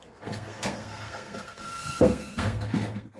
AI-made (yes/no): yes